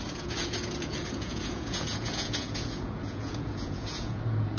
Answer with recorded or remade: remade